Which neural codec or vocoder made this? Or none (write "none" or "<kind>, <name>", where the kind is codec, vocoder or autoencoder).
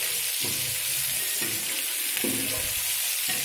none